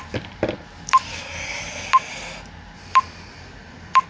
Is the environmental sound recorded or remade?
recorded